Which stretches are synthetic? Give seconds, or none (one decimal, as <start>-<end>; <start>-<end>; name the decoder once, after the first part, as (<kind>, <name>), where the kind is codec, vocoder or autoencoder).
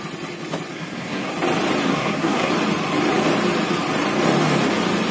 0.7-1.3 (codec, SNAC); 1.9-2.5